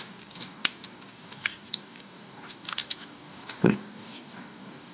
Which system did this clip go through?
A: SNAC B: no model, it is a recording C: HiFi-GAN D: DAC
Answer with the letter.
D